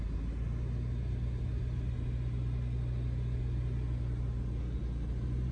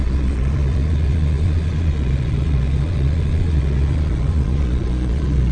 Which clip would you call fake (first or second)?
second